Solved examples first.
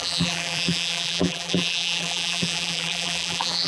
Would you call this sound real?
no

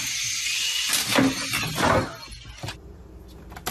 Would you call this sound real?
yes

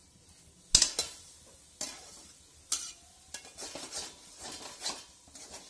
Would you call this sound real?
yes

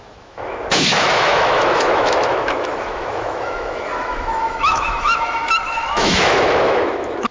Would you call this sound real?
no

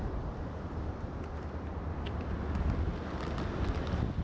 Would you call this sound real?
yes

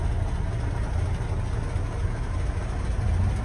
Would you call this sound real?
yes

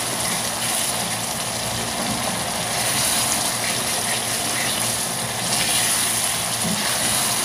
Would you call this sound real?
yes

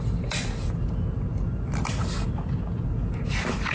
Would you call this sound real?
yes